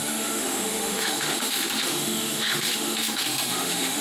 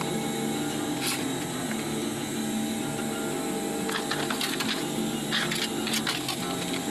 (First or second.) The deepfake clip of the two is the first